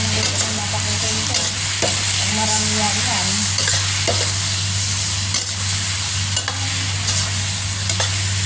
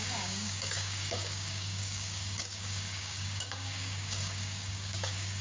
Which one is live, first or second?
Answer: first